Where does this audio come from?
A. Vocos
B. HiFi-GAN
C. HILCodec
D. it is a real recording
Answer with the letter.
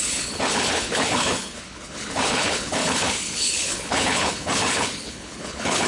C